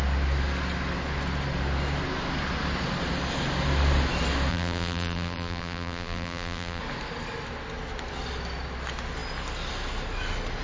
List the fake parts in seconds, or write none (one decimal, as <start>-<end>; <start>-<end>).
4.5-6.8